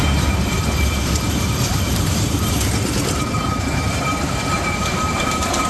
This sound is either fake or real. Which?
fake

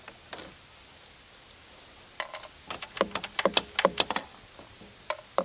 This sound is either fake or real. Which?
real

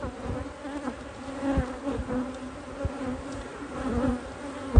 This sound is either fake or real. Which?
real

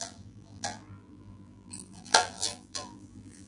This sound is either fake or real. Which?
fake